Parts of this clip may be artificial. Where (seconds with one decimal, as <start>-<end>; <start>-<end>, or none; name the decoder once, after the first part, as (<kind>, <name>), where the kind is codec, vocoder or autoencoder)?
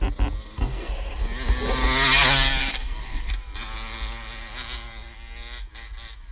0.4-0.9 (codec, SNAC); 2.6-3.3